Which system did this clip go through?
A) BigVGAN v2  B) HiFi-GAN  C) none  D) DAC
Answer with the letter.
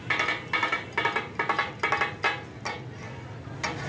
C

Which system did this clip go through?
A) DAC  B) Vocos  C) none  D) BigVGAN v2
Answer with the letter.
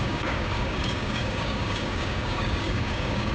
A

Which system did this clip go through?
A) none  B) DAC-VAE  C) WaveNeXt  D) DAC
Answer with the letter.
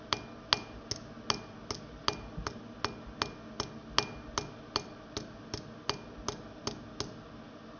A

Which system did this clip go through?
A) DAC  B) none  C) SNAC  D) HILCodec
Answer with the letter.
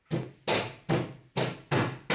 B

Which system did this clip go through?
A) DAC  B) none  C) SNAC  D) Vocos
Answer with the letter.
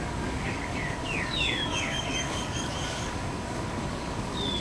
A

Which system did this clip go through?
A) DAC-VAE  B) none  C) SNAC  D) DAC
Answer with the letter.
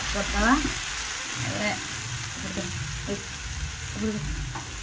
B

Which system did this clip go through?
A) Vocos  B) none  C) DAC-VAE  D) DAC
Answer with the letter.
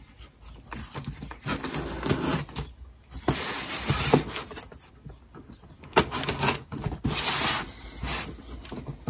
B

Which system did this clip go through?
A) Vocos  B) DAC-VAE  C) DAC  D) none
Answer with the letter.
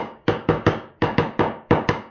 C